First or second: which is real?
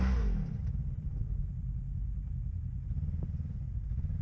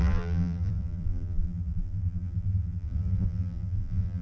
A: first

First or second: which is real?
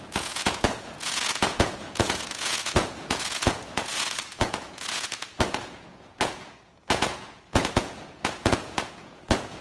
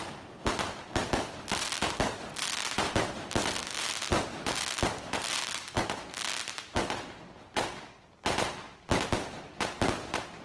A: second